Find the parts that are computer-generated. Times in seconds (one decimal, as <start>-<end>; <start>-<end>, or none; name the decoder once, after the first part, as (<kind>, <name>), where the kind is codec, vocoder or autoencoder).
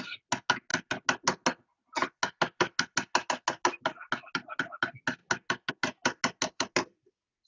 none